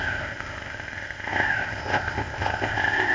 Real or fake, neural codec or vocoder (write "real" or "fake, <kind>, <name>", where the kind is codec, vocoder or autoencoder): fake, codec, ZipCodec